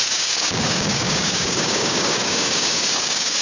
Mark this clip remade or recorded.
remade